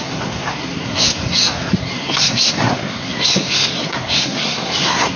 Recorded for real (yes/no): no